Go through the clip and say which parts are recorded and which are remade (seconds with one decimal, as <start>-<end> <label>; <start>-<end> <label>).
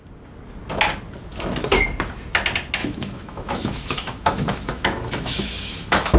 0.0-1.3 recorded; 1.3-1.8 remade; 1.8-2.8 recorded; 2.8-6.2 remade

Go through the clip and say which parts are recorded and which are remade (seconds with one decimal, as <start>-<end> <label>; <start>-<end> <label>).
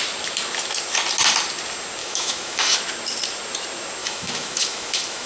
0.0-2.0 recorded; 2.0-2.8 remade; 2.8-4.0 recorded; 4.0-5.3 remade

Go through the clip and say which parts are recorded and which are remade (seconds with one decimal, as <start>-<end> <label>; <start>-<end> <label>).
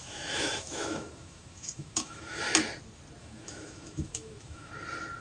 0.0-2.4 remade; 2.4-3.2 recorded; 3.2-4.7 remade; 4.7-5.2 recorded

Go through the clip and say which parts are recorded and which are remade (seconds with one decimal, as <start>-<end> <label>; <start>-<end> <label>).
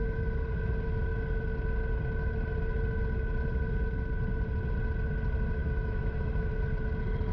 0.0-5.6 recorded; 5.6-6.5 remade; 6.5-7.3 recorded